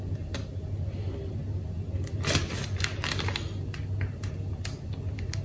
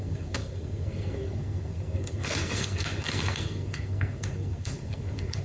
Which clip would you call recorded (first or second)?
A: first